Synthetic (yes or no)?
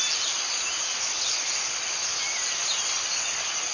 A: no